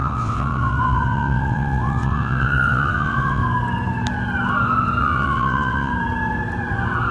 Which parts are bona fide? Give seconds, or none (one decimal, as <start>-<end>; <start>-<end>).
3.4-5.0; 5.9-7.1